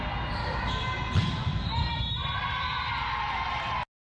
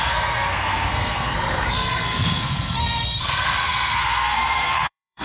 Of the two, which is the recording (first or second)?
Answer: first